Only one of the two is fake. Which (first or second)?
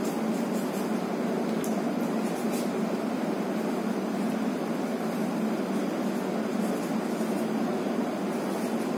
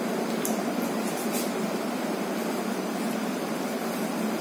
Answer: second